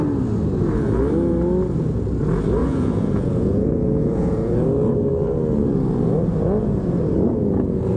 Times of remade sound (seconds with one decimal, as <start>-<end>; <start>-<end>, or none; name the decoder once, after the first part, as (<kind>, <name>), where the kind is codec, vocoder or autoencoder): 2.6-4.5 (vocoder, Vocos)